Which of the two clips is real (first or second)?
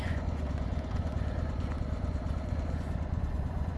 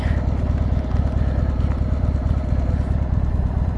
second